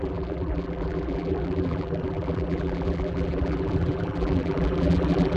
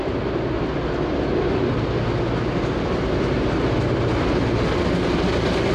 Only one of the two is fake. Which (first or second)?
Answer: first